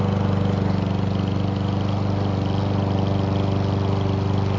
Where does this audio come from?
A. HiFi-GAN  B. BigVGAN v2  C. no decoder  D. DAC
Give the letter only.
C